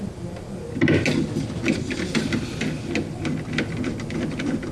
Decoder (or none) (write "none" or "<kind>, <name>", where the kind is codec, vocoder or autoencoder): none